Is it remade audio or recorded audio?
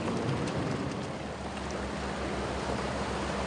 recorded